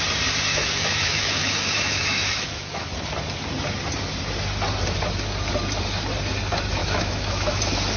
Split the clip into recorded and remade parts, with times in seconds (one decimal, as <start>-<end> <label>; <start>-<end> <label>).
0.0-0.5 recorded; 0.5-2.9 remade; 2.9-6.8 recorded; 6.8-7.6 remade; 7.6-8.0 recorded